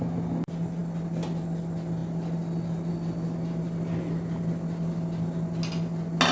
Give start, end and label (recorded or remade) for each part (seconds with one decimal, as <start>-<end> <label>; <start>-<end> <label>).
0.0-6.3 recorded